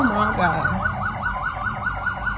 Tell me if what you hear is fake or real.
real